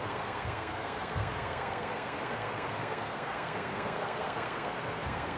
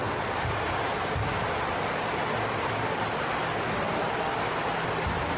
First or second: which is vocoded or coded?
first